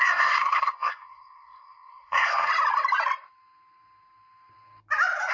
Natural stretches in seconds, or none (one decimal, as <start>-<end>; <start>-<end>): 2.5-5.3

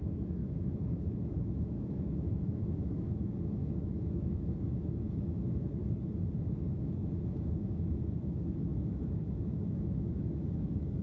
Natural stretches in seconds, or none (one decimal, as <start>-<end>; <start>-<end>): 5.8-6.7

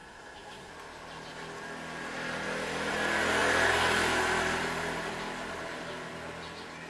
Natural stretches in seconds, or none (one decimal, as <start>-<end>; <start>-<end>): 0.7-6.9

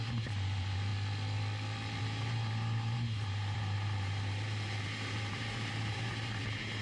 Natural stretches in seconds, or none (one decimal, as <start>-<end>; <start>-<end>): 0.9-2.0

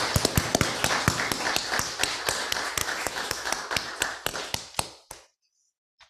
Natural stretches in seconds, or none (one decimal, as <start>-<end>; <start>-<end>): 0.0-2.8; 3.5-6.1